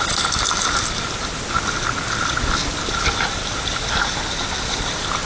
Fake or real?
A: real